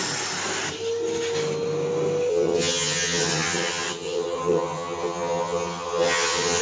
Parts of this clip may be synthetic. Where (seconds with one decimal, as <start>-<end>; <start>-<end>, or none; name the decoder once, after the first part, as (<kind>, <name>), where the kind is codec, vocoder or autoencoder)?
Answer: 2.3-6.6 (vocoder, HiFi-GAN)